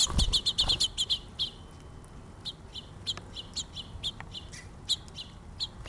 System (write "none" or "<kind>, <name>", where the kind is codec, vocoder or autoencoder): none